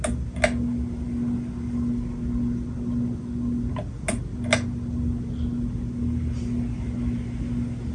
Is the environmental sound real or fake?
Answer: real